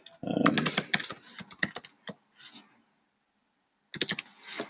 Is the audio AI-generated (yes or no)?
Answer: no